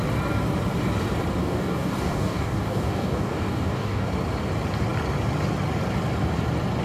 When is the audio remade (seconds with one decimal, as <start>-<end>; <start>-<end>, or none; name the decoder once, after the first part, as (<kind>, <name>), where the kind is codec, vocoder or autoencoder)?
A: 1.4-4.1 (codec, DAC)